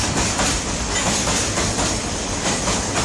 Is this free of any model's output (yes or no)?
yes